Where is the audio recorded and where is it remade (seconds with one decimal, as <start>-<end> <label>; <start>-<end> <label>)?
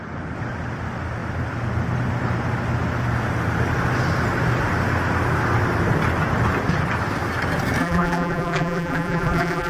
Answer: 0.0-7.8 recorded; 7.8-9.7 remade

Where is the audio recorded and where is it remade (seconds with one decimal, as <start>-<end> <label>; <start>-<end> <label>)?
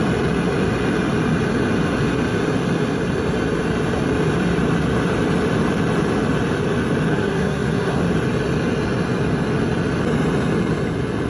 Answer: 0.0-7.1 recorded; 7.1-8.0 remade; 8.0-11.3 recorded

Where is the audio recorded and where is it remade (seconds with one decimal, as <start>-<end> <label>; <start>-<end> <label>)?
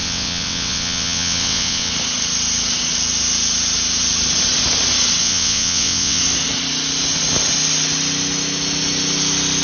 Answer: 0.0-1.9 remade; 1.9-5.2 recorded; 5.2-6.2 remade; 6.2-9.6 recorded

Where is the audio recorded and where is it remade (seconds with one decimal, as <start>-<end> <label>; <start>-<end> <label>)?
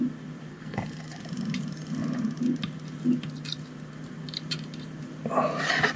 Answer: 0.0-0.5 recorded; 0.5-1.2 remade; 1.2-6.0 recorded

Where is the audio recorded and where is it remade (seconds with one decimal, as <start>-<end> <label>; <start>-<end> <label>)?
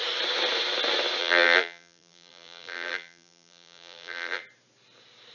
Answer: 0.0-1.2 recorded; 1.2-4.4 remade; 4.4-5.3 recorded